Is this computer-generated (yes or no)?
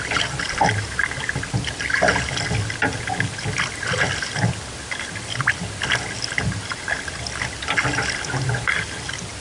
no